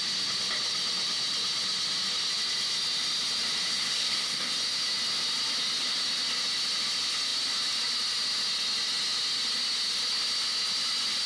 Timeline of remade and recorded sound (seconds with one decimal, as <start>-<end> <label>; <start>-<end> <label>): 0.0-3.7 recorded; 3.7-4.5 remade; 4.5-11.3 recorded